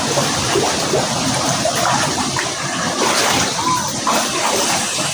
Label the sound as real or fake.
fake